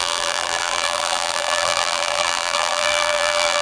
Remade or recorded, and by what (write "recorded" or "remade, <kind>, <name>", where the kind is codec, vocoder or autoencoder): remade, vocoder, BigVGAN v2